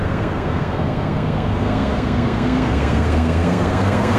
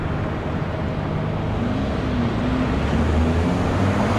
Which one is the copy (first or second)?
first